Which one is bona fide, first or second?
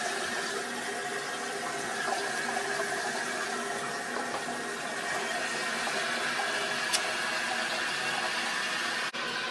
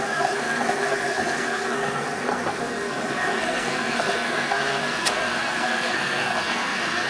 first